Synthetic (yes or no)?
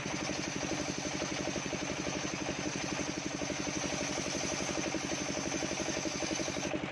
no